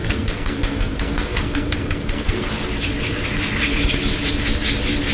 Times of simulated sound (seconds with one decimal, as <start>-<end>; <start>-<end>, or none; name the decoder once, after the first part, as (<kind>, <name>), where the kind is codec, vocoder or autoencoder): 0.0-2.5 (codec, SNAC)